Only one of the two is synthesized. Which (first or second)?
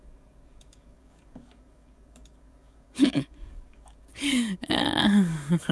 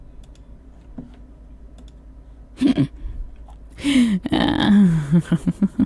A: first